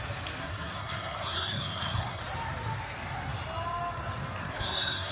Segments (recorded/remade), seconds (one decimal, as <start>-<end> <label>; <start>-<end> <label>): 0.0-0.4 recorded; 0.4-2.2 remade; 2.2-4.4 recorded; 4.4-5.1 remade